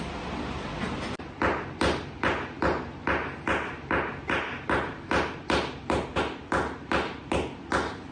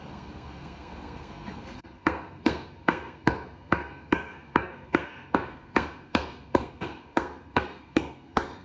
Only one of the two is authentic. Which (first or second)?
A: first